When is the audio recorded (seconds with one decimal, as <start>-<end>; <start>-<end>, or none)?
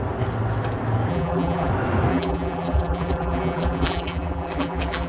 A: 0.0-1.1; 1.7-2.1